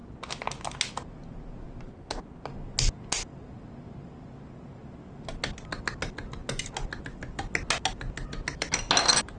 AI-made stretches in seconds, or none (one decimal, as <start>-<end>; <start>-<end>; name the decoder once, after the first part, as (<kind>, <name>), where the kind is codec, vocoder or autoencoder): none